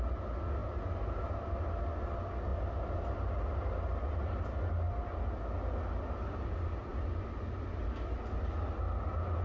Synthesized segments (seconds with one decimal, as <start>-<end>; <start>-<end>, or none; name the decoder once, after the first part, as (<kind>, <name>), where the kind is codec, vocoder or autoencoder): none